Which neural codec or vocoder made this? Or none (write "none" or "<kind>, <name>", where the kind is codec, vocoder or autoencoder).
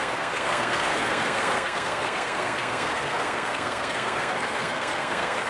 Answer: codec, SNAC